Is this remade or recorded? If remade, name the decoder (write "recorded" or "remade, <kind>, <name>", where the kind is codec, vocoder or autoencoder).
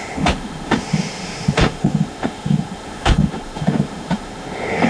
remade, autoencoder, DAC-VAE